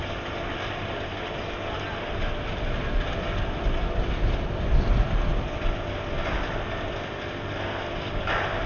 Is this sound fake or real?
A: real